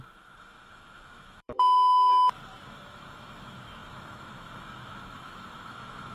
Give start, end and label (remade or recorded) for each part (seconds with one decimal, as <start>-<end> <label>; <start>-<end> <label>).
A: 0.0-2.1 remade; 2.1-2.7 recorded; 2.7-6.1 remade